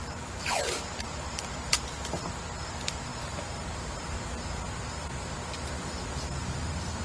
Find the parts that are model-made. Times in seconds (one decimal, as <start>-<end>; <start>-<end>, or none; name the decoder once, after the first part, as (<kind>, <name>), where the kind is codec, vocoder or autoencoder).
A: 0.0-2.0 (vocoder, BigVGAN v2)